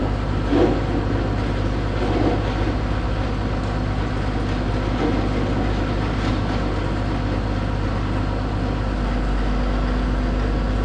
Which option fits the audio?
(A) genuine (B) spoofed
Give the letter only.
A